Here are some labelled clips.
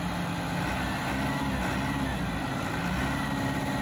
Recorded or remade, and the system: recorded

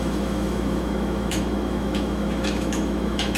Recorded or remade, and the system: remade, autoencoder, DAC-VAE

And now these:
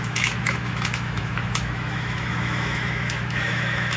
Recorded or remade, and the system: remade, autoencoder, DAC-VAE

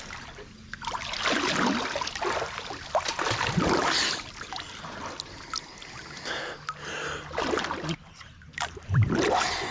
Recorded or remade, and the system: recorded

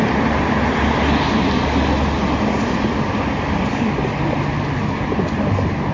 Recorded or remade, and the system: recorded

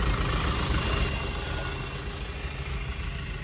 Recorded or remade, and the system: recorded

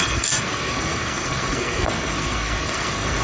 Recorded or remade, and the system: remade, codec, SNAC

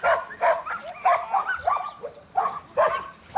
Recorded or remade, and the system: recorded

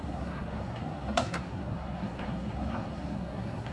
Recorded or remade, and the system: remade, codec, SNAC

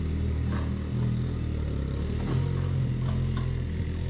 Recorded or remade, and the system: recorded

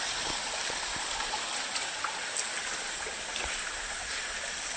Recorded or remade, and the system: recorded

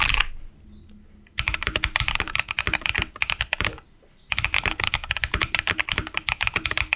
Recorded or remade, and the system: recorded